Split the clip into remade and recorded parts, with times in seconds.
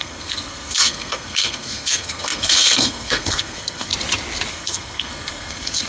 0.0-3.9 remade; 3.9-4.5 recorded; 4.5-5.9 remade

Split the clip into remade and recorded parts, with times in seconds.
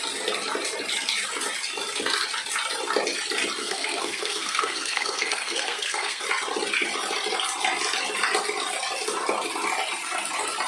0.0-3.6 recorded; 3.6-6.2 remade; 6.2-10.7 recorded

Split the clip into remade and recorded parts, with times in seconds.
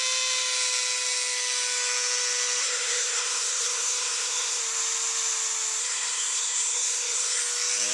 0.0-2.6 recorded; 2.6-4.6 remade; 4.6-5.8 recorded; 5.8-7.4 remade; 7.4-7.9 recorded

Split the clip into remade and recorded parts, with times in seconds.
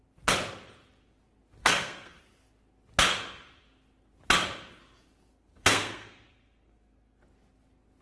0.0-1.6 recorded; 1.6-2.2 remade; 2.2-5.3 recorded; 5.3-7.2 remade; 7.2-8.0 recorded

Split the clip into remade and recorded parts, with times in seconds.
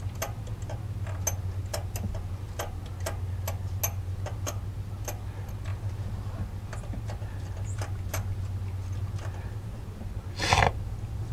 0.0-11.3 recorded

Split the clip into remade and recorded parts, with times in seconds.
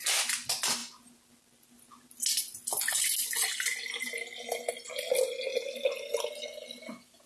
0.0-7.3 recorded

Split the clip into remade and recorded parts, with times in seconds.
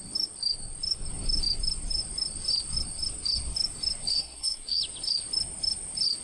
0.0-4.1 recorded; 4.1-4.8 remade; 4.8-6.2 recorded